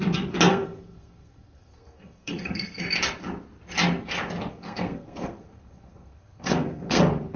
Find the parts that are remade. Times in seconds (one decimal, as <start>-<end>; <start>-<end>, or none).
0.5-2.8; 4.5-7.0